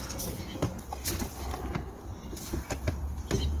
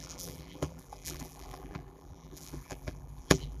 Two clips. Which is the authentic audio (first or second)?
first